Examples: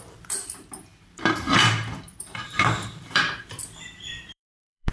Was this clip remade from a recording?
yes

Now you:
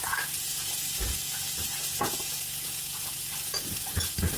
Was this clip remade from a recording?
yes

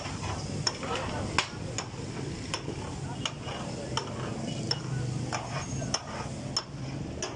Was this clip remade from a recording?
no